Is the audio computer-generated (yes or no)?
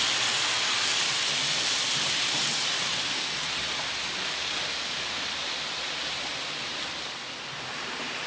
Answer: no